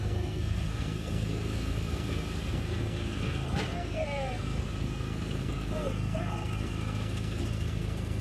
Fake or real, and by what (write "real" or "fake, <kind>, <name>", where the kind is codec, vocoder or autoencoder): fake, codec, SNAC